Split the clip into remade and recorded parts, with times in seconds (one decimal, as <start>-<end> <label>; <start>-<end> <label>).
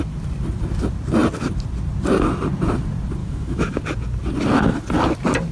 0.0-3.2 recorded; 3.2-3.8 remade; 3.8-5.5 recorded